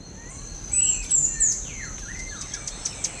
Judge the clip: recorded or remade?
recorded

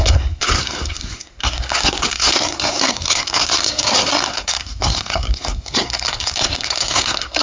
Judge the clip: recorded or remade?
remade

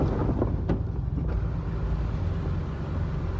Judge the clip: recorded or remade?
recorded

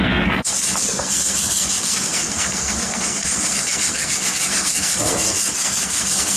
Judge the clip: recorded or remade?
remade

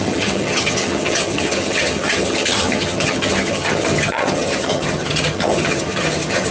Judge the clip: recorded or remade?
remade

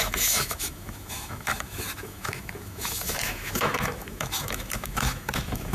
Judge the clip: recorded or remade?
remade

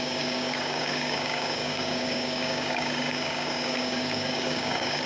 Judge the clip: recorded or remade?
remade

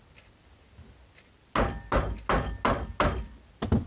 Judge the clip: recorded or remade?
recorded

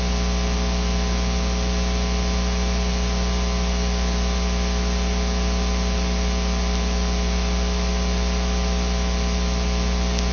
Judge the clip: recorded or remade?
recorded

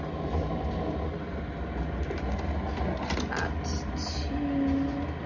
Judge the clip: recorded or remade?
recorded